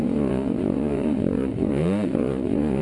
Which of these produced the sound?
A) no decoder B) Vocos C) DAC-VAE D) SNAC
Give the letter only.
B